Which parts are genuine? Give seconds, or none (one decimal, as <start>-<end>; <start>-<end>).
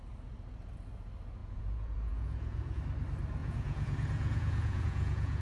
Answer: 0.0-1.4; 2.8-3.4